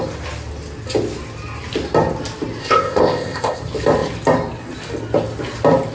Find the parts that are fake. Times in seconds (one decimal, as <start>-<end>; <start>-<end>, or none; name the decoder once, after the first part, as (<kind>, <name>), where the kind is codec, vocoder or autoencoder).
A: 2.6-3.6 (codec, ZipCodec)